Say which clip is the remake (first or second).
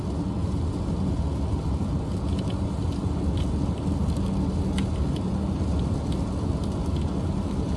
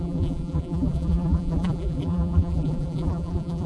second